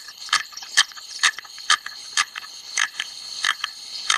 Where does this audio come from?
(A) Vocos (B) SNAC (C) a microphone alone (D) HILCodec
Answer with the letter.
D